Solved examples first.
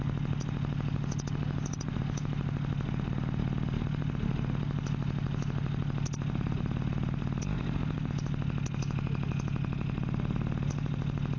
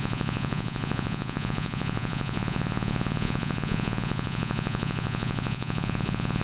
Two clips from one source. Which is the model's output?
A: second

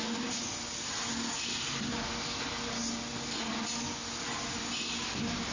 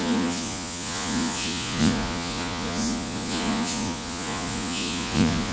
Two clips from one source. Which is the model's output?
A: second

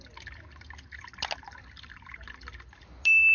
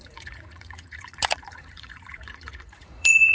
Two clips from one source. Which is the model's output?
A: second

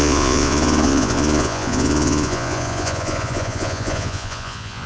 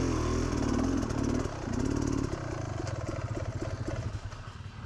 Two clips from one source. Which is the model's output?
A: first